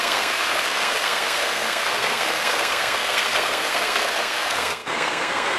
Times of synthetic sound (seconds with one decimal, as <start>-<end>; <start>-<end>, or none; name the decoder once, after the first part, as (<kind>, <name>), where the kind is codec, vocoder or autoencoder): 0.0-5.6 (codec, SNAC)